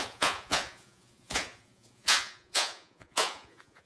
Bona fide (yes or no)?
no